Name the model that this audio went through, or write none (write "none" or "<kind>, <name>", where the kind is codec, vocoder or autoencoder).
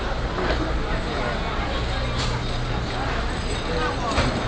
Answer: none